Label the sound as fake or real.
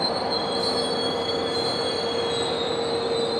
real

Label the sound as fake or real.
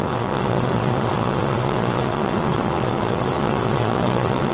fake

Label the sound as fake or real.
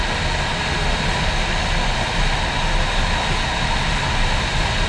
real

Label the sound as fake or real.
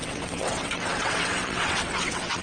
fake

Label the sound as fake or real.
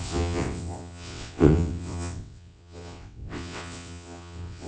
fake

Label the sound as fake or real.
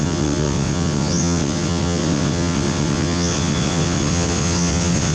fake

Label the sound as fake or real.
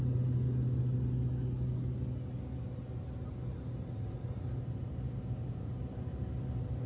real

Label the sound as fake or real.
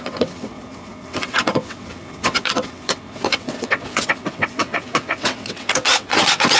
fake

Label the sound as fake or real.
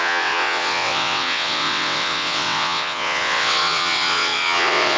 fake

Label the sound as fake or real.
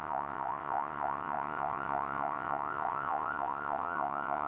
fake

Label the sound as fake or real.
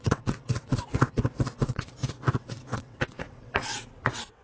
fake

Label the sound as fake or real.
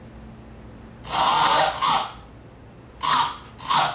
real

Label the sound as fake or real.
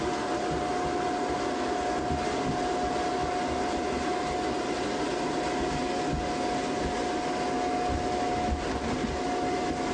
real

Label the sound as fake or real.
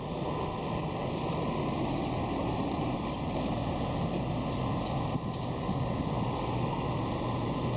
real